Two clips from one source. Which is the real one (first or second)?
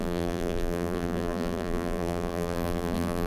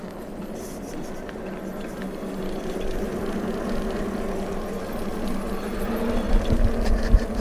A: second